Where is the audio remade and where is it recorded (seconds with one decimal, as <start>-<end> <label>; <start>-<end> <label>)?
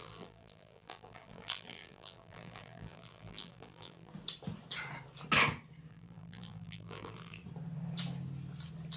0.0-4.1 remade; 4.1-5.9 recorded; 5.9-7.4 remade; 7.4-9.0 recorded